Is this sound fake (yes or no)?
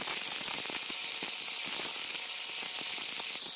no